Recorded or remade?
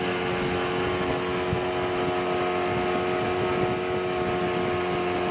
recorded